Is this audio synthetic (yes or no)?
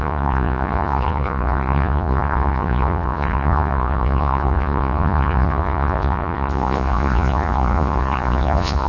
yes